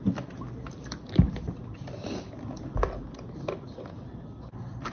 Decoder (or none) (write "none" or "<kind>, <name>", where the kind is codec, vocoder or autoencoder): none